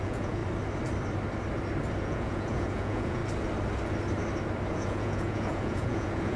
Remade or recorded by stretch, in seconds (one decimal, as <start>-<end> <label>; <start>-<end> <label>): 0.0-0.4 remade; 0.4-2.0 recorded; 2.0-3.2 remade; 3.2-4.7 recorded; 4.7-6.4 remade

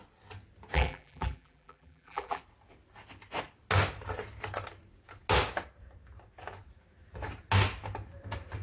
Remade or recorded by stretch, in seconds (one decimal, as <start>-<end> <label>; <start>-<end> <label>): 0.0-0.7 recorded; 0.7-2.4 remade; 2.4-8.6 recorded

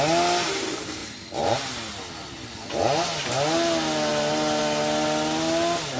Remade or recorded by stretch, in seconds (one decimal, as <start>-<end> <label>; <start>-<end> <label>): 0.0-6.0 recorded